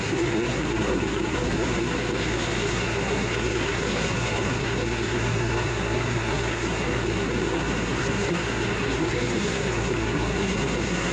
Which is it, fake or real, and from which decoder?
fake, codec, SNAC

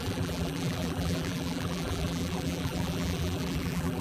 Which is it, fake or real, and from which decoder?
fake, vocoder, BigVGAN v2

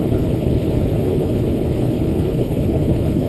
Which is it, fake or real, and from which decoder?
fake, codec, HILCodec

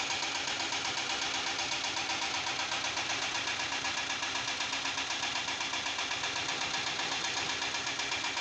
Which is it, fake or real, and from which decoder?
real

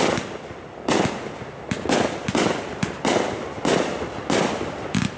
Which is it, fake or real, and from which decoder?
real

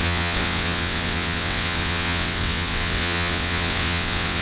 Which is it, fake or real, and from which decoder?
fake, vocoder, WaveNeXt